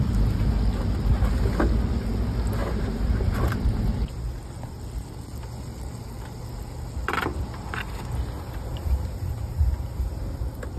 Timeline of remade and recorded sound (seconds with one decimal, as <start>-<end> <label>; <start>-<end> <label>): 0.0-2.6 recorded; 2.6-4.2 remade; 4.2-8.7 recorded; 8.7-10.1 remade; 10.1-10.8 recorded